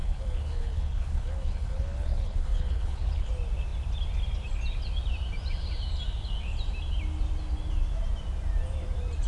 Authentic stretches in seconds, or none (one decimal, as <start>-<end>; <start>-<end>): 3.3-9.3